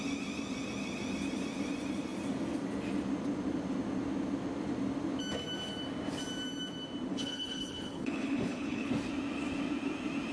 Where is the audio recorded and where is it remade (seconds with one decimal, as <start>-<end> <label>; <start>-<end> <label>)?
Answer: 0.0-7.1 recorded; 7.1-8.9 remade; 8.9-10.3 recorded